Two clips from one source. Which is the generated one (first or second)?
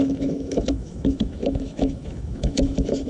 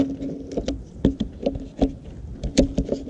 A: first